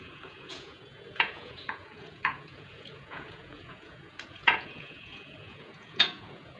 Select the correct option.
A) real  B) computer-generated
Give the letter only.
B